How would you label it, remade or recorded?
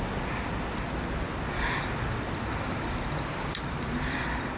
recorded